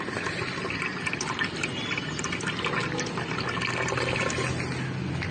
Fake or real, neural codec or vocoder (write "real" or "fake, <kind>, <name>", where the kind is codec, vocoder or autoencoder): real